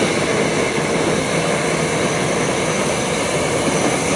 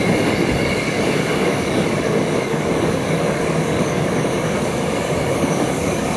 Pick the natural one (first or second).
first